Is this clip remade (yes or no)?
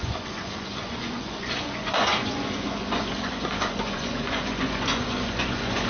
yes